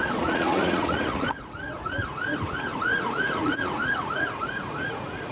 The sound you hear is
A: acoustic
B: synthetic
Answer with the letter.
B